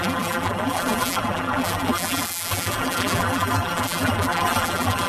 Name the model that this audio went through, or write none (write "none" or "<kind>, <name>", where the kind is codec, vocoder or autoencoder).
vocoder, BigVGAN v2